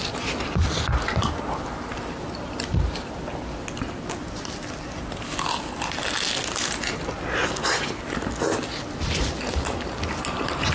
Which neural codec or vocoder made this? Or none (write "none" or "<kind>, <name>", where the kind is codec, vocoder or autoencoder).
none